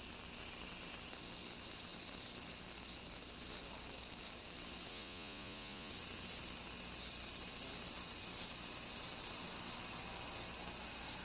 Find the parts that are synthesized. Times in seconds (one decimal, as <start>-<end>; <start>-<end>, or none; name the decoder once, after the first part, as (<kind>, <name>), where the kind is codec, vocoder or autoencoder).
4.9-5.9 (vocoder, Vocos)